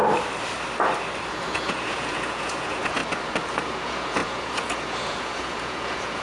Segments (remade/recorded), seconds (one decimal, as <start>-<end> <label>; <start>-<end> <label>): 0.0-1.3 recorded; 1.3-3.0 remade; 3.0-3.6 recorded; 3.6-6.2 remade